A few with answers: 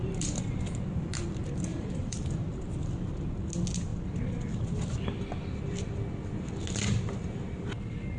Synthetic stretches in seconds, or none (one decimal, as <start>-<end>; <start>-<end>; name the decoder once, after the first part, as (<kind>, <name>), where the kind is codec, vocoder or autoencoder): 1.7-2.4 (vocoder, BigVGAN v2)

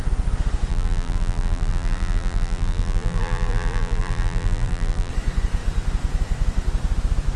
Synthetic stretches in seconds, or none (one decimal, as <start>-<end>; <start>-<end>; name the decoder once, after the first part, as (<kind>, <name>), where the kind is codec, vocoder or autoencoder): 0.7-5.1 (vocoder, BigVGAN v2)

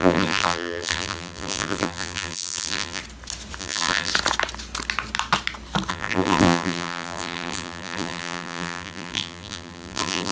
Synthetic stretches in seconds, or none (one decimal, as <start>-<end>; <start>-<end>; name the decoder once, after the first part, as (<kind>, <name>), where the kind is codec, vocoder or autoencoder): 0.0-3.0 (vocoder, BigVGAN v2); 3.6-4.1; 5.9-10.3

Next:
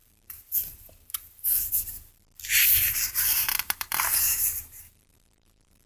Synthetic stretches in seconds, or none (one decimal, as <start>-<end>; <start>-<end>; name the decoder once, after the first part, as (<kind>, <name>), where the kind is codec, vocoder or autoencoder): 0.0-1.7 (vocoder, BigVGAN v2); 2.8-5.9

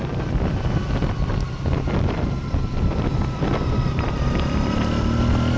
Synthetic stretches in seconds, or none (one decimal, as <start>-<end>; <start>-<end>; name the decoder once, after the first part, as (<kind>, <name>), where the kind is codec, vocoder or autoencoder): 0.8-4.2 (vocoder, BigVGAN v2)